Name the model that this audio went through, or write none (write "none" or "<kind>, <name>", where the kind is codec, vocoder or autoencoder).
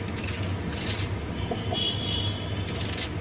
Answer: none